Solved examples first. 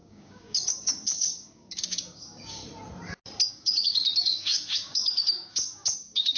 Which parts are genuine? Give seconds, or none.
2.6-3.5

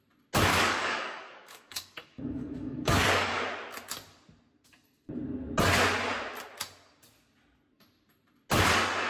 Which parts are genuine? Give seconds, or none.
0.0-0.5; 3.4-9.1

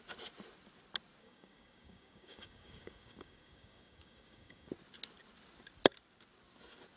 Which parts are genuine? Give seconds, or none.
0.0-1.2; 4.7-7.0

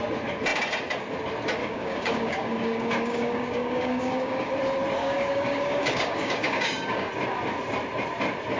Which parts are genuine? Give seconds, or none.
0.0-1.6; 4.5-5.0; 7.1-8.6

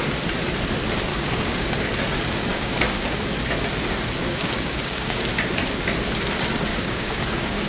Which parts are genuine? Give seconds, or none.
0.0-1.1; 1.9-2.5; 3.2-4.2; 5.2-6.7

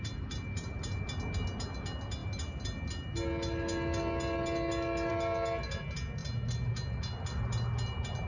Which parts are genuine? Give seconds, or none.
0.0-8.3